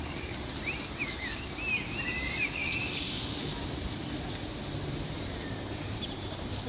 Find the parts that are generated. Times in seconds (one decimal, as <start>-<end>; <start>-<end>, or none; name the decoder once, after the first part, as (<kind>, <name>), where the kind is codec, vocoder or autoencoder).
0.0-2.6 (vocoder, BigVGAN v2); 4.9-6.7